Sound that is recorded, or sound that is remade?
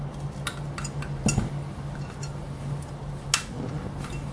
recorded